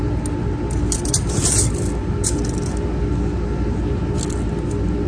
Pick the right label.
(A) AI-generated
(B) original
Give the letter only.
B